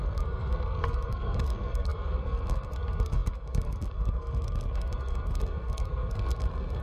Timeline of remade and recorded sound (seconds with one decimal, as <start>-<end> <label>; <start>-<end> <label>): 0.0-6.8 remade